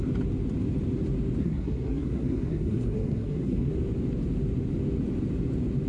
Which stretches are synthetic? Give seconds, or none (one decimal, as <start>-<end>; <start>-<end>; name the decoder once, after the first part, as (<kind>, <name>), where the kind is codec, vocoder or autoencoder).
1.4-3.7 (codec, SNAC)